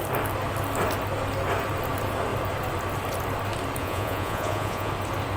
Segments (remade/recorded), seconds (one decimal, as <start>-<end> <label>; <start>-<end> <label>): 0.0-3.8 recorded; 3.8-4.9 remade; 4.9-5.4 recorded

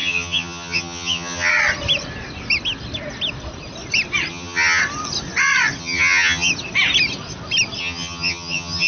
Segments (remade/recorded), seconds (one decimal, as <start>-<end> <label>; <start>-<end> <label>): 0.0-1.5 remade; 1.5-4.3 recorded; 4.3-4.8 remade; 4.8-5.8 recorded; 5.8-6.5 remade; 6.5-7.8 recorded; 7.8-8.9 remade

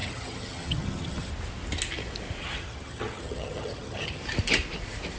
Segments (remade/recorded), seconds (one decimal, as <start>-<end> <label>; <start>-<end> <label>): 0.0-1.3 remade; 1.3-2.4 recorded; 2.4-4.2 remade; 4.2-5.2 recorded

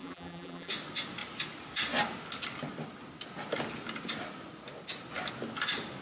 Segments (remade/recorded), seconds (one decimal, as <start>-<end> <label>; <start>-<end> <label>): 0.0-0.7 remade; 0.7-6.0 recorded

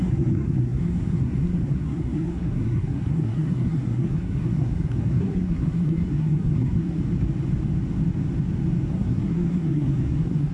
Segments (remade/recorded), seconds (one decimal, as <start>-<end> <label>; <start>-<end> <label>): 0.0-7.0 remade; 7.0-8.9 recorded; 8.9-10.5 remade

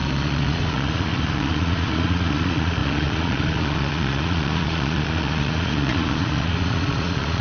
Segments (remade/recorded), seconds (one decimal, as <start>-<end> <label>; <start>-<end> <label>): 0.0-7.4 remade